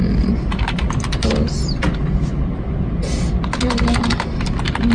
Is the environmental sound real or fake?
real